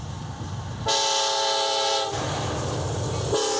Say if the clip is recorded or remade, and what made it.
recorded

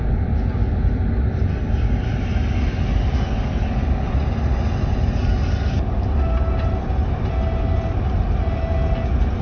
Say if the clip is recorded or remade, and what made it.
recorded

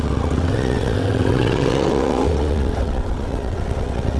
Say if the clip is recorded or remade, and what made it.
remade, vocoder, WaveNeXt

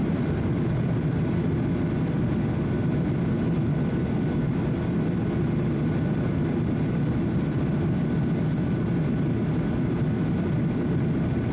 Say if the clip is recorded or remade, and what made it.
recorded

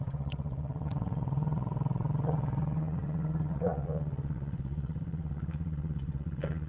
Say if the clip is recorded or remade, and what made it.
remade, vocoder, WaveNeXt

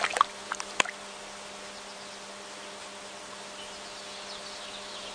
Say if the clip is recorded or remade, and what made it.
recorded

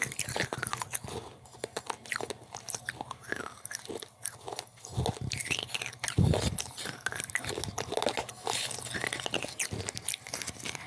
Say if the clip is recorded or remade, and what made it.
recorded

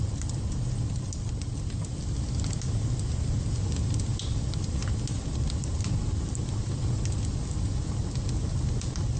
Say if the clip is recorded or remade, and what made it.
recorded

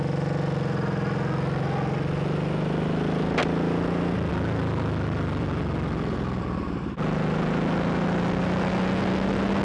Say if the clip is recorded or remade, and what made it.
recorded